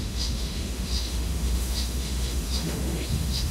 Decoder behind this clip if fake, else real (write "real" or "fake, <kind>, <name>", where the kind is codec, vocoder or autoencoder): fake, autoencoder, DAC-VAE